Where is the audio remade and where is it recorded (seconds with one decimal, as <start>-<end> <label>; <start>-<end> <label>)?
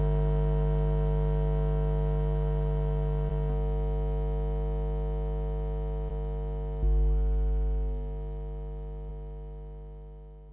0.0-10.5 recorded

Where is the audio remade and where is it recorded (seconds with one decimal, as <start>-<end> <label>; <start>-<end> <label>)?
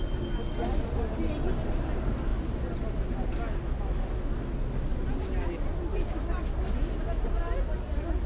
0.0-8.3 recorded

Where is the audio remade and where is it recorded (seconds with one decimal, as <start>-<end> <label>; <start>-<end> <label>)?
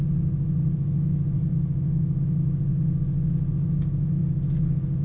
0.0-1.5 remade; 1.5-2.2 recorded; 2.2-2.7 remade; 2.7-3.5 recorded; 3.5-4.2 remade; 4.2-5.0 recorded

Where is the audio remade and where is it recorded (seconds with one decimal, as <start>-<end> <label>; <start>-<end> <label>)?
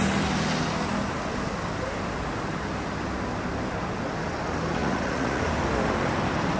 0.0-4.8 recorded; 4.8-5.4 remade; 5.4-6.6 recorded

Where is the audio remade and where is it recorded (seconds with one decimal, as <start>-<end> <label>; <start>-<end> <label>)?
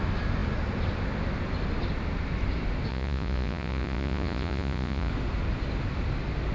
0.0-2.9 recorded; 2.9-5.1 remade; 5.1-6.5 recorded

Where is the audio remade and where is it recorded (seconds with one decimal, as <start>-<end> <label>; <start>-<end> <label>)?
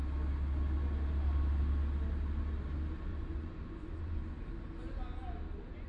0.0-3.1 recorded; 3.1-4.4 remade; 4.4-5.9 recorded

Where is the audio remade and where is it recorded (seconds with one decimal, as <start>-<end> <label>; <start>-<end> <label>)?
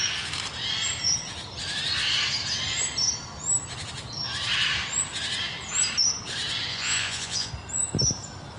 0.0-6.7 recorded; 6.7-7.5 remade; 7.5-8.6 recorded